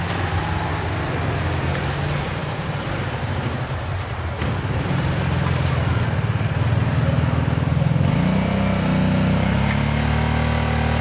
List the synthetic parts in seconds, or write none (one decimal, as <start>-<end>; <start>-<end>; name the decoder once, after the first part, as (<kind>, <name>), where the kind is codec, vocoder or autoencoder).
0.4-1.0 (vocoder, BigVGAN v2); 2.4-5.7